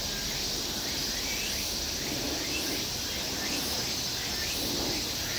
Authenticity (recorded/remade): recorded